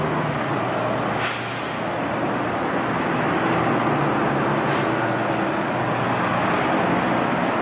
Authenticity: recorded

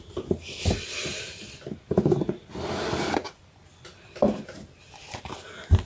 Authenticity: recorded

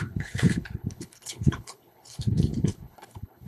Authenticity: remade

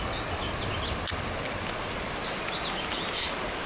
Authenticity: recorded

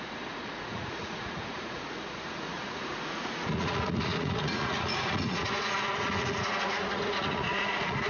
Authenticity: remade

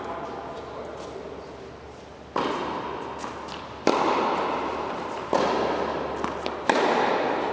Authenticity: recorded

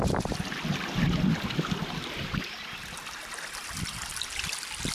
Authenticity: recorded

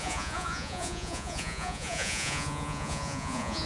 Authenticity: remade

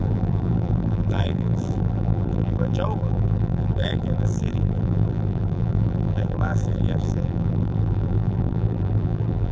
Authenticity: remade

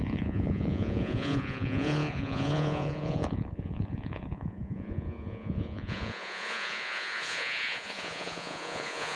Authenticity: remade